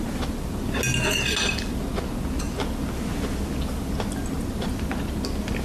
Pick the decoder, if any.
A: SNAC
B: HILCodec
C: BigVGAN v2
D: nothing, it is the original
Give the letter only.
D